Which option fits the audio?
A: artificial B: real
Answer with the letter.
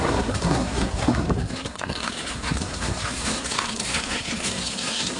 A